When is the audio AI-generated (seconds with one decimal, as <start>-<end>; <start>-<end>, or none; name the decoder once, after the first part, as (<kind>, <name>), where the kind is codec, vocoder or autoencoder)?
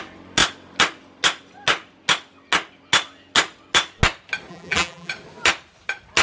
4.5-5.1 (vocoder, BigVGAN v2)